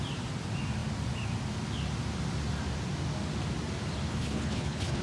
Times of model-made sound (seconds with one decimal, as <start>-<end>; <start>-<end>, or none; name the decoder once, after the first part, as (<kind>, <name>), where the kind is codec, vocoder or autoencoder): 4.1-5.0 (codec, HILCodec)